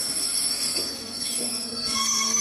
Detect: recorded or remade remade